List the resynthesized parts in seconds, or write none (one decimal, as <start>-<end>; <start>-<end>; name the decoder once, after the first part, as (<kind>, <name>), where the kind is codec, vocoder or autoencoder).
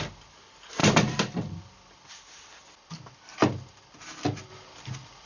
none